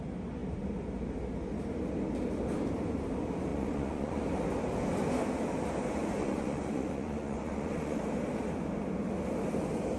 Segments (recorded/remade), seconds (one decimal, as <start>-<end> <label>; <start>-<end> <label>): 0.0-3.5 recorded; 3.5-4.2 remade; 4.2-6.0 recorded; 6.0-8.0 remade; 8.0-10.0 recorded